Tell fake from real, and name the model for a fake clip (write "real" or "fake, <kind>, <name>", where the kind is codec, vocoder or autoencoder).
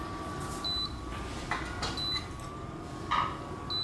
real